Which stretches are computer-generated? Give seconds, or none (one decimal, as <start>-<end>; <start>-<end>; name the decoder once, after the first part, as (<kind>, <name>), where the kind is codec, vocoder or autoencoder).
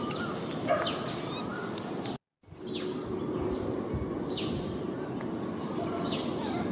0.0-0.7 (vocoder, BigVGAN v2)